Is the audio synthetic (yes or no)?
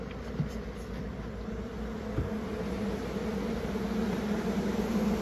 no